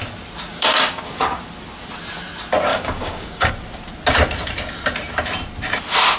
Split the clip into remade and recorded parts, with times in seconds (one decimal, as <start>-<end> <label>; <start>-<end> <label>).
0.0-0.5 recorded; 0.5-1.4 remade; 1.4-2.7 recorded; 2.7-3.5 remade; 3.5-6.2 recorded